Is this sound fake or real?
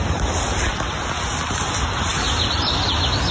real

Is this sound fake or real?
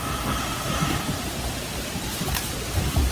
real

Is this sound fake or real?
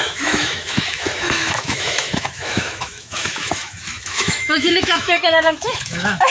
fake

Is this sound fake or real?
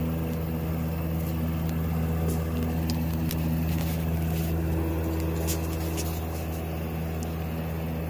real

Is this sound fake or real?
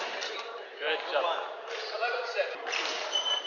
fake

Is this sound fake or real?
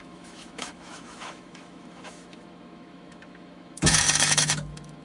fake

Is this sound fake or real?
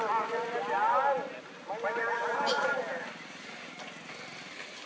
real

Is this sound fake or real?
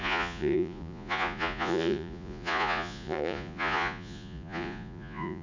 fake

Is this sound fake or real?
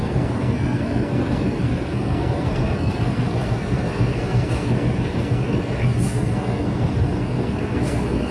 fake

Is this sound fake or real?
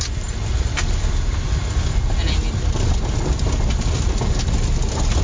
real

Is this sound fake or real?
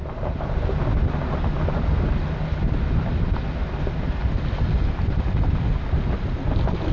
real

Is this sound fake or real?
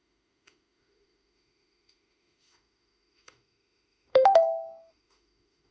fake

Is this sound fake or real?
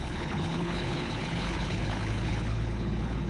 fake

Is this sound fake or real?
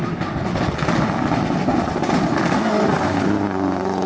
real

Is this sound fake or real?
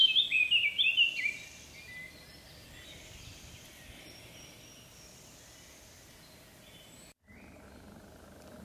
real